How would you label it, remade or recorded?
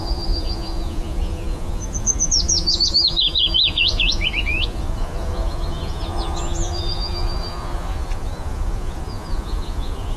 remade